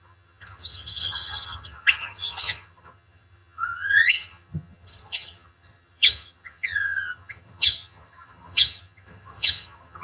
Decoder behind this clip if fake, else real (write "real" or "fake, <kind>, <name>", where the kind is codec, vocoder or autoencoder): fake, vocoder, HiFi-GAN